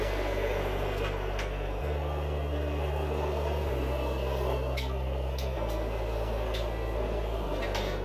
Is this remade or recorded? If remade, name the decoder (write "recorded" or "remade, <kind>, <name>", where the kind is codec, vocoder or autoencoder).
remade, codec, SNAC